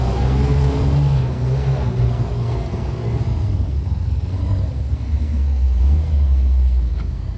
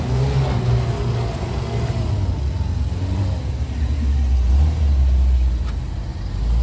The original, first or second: second